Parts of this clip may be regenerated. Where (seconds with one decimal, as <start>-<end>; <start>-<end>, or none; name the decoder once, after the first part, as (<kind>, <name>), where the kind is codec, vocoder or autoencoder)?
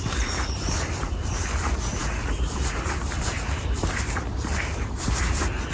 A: 0.0-5.7 (vocoder, BigVGAN v2)